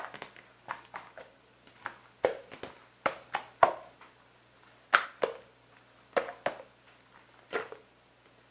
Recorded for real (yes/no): yes